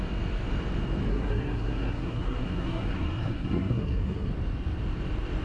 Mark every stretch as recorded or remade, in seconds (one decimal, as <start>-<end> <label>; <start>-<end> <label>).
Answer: 0.0-1.1 recorded; 1.1-4.3 remade; 4.3-5.4 recorded